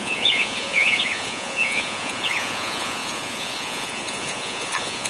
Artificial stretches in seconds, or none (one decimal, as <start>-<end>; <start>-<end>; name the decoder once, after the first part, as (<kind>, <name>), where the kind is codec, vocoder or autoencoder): 0.0-5.1 (vocoder, Vocos)